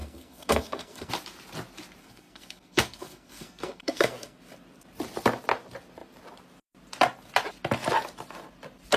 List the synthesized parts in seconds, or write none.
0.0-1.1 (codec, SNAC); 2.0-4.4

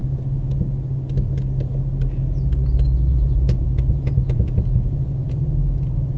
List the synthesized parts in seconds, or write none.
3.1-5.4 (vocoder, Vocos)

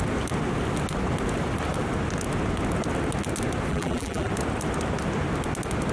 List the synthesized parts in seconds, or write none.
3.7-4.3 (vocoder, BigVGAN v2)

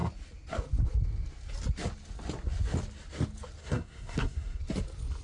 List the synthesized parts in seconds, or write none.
3.6-4.6 (codec, SNAC)